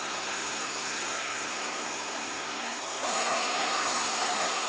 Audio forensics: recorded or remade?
remade